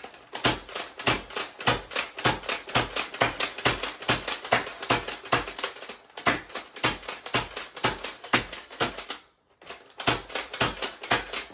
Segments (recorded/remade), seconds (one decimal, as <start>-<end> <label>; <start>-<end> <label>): 0.0-8.2 recorded; 8.2-8.9 remade; 8.9-11.5 recorded